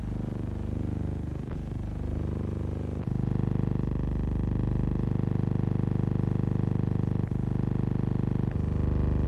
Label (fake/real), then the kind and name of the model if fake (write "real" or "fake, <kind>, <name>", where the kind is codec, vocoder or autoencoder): real